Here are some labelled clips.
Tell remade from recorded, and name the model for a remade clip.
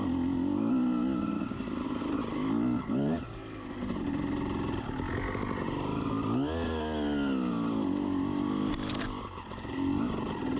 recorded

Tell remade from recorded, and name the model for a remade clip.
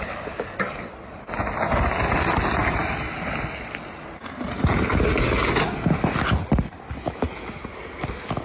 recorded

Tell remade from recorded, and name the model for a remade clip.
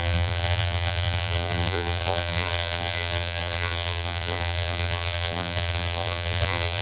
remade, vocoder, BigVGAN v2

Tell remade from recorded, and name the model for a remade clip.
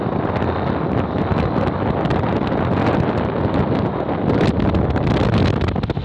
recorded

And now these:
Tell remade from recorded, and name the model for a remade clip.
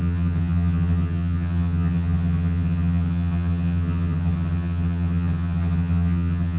remade, vocoder, HiFi-GAN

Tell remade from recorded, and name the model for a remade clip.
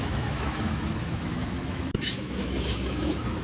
remade, autoencoder, DAC-VAE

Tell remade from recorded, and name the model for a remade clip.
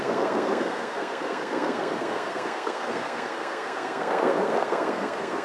remade, codec, SNAC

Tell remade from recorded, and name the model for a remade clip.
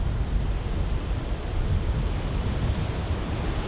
recorded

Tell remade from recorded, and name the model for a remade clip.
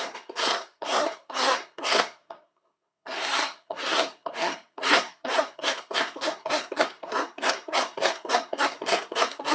remade, codec, SNAC